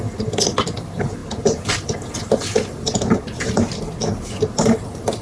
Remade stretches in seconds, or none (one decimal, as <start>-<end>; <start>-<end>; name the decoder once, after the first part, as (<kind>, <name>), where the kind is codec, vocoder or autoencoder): none